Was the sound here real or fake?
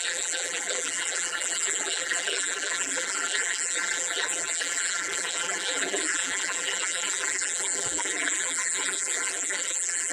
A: fake